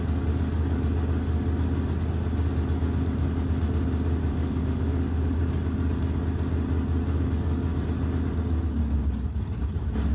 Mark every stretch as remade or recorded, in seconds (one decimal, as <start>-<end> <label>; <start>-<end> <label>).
0.0-4.3 recorded; 4.3-5.4 remade; 5.4-10.1 recorded